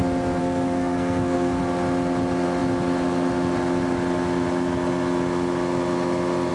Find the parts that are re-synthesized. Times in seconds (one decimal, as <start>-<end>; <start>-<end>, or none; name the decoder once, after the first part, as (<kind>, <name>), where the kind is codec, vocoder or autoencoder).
0.4-1.6 (codec, SNAC)